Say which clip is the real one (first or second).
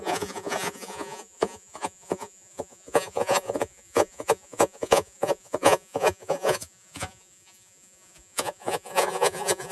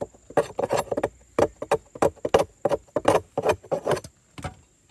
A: second